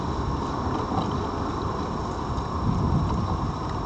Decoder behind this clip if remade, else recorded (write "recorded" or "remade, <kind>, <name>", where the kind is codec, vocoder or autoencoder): recorded